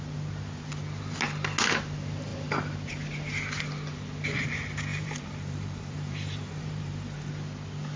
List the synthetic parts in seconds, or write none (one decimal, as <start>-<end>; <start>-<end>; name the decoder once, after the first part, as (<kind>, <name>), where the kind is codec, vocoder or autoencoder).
4.9-7.3 (vocoder, BigVGAN v2)